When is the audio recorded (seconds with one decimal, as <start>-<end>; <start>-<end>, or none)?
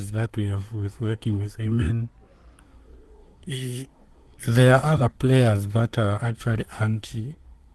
1.9-2.6